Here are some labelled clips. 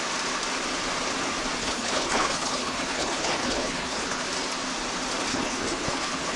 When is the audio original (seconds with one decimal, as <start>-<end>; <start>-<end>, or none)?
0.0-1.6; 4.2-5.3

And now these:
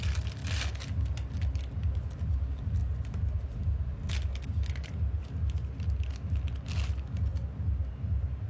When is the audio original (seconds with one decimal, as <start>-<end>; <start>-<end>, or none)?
0.0-8.5

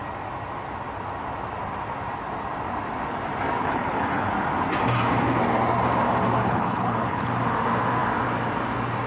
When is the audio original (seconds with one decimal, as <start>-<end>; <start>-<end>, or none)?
0.0-3.6; 4.3-6.4; 7.3-9.1